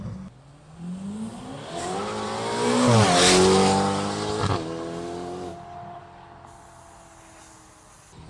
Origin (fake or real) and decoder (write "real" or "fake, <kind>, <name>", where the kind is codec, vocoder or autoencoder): real